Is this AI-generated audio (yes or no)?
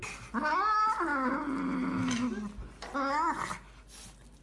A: no